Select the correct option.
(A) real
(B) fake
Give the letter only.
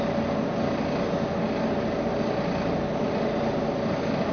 A